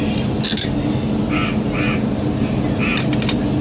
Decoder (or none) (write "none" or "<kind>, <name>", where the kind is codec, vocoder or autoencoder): none